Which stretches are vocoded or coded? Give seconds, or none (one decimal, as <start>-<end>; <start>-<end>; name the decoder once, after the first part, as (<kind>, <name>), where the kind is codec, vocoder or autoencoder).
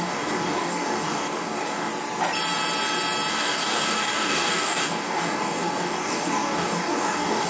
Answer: 0.0-1.9 (codec, DAC); 3.3-7.5